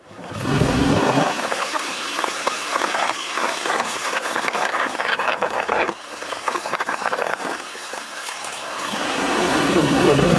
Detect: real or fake fake